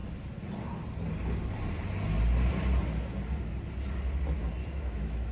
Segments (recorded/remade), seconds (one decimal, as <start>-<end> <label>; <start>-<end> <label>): 0.0-4.6 recorded; 4.6-5.3 remade